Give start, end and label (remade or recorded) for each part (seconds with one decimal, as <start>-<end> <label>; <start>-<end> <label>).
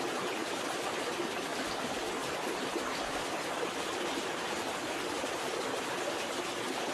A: 0.0-6.9 recorded